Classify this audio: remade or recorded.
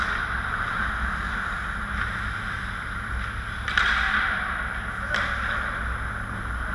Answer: recorded